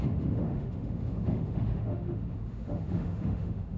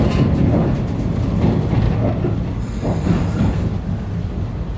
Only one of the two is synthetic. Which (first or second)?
first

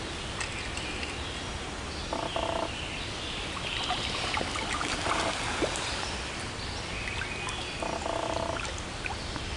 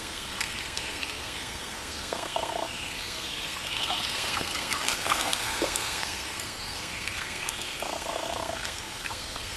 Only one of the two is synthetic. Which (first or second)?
second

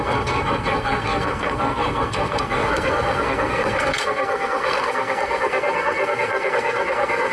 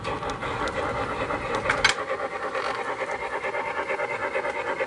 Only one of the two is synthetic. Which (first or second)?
first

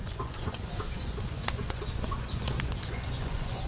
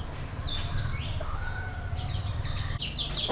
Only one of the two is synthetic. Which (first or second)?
first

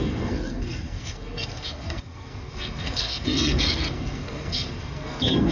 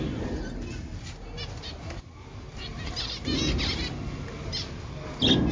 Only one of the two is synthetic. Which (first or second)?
first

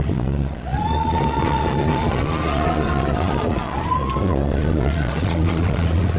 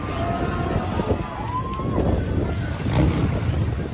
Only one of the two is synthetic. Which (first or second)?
first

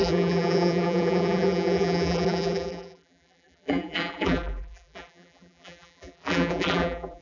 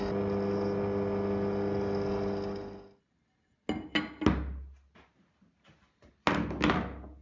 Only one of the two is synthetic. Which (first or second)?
first